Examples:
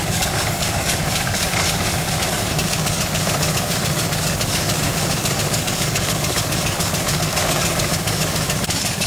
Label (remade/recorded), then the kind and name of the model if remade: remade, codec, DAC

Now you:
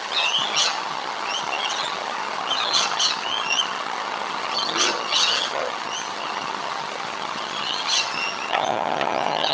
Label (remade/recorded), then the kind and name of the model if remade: remade, vocoder, HiFi-GAN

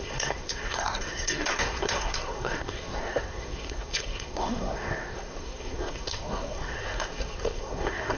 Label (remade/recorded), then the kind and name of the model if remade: remade, codec, SNAC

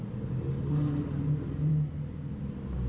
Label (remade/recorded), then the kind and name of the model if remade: recorded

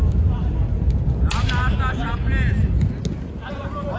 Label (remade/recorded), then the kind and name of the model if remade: recorded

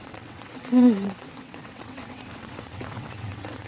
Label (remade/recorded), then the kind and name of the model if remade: remade, vocoder, WaveNeXt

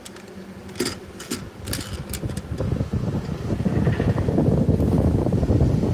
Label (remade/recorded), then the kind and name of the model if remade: recorded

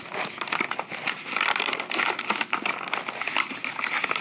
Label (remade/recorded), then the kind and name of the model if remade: recorded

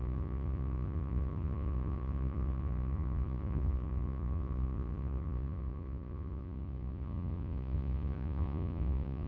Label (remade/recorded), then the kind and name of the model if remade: remade, vocoder, Vocos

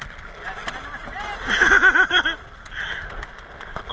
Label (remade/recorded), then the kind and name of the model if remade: recorded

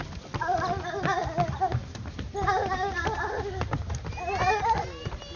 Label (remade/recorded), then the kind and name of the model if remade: recorded